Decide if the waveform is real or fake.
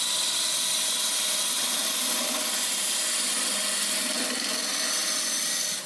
real